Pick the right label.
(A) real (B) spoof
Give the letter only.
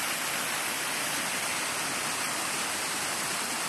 A